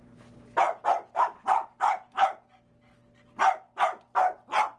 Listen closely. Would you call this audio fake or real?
real